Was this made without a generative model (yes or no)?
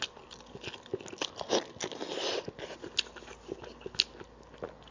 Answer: yes